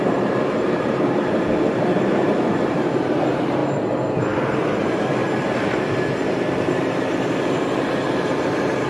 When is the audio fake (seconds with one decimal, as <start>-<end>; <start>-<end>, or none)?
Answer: 0.0-8.9